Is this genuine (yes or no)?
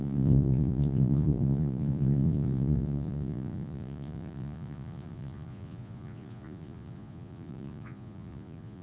no